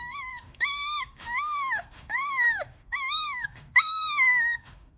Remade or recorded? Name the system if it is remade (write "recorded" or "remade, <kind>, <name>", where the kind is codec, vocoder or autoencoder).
remade, autoencoder, DAC-VAE